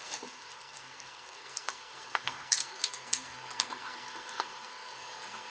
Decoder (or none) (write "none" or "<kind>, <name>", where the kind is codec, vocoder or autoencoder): codec, SNAC